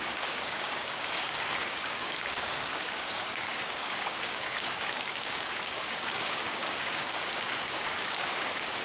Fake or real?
fake